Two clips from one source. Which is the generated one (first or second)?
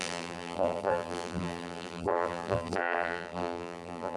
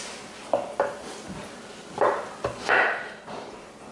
first